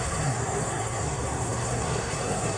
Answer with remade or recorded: remade